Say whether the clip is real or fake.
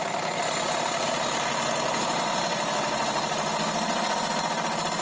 real